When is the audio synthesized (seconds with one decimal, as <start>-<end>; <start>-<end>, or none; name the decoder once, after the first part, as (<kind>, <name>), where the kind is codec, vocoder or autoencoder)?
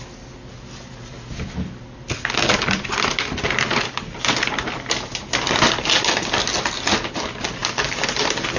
none